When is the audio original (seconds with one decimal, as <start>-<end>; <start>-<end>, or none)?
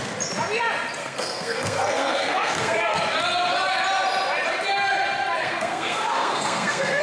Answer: 0.0-1.0; 3.0-5.4